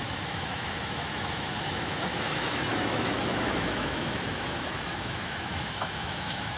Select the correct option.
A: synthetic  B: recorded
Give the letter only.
A